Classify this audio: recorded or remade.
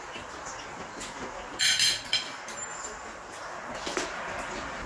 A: recorded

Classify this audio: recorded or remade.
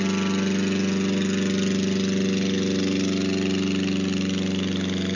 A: recorded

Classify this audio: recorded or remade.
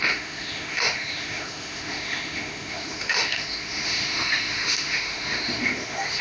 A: remade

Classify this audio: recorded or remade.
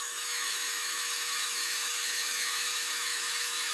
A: remade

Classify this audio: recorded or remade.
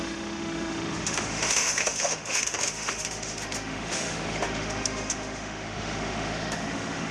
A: remade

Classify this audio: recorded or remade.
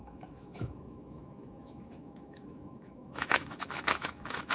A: remade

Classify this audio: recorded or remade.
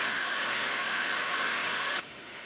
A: remade